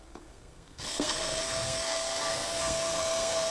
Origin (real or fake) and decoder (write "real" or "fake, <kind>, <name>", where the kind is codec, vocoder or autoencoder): fake, codec, SNAC